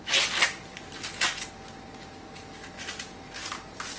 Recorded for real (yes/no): yes